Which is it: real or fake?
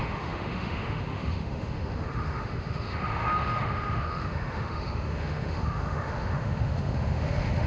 fake